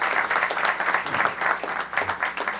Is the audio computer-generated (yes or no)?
no